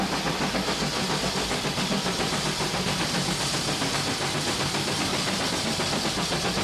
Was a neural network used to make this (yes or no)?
no